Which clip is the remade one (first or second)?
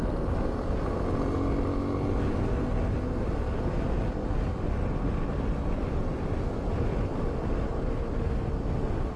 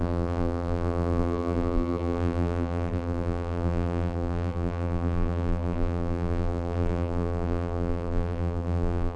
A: second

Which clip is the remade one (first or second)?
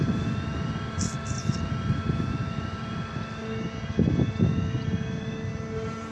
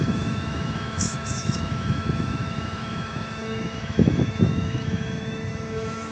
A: second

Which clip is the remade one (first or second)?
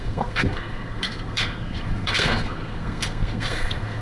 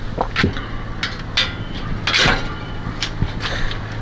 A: first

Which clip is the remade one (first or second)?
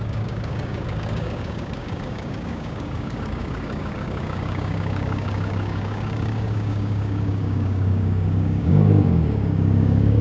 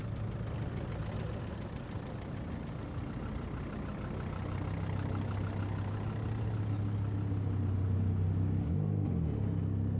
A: first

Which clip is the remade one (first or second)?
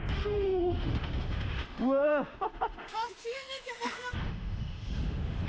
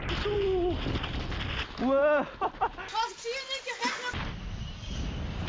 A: first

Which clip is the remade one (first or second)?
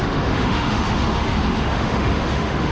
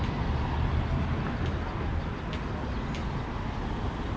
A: first